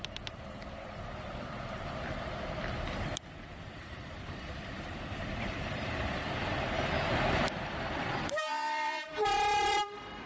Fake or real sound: fake